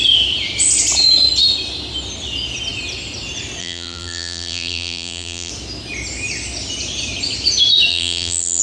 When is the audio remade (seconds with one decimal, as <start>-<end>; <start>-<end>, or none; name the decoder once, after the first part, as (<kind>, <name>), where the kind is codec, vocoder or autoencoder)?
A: 3.6-5.5 (vocoder, BigVGAN v2); 7.9-8.6